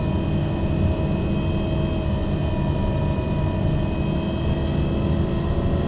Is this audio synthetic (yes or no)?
no